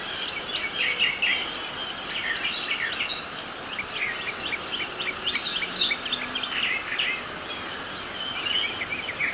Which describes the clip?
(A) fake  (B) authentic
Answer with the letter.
A